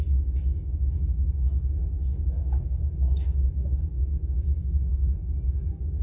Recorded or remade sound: remade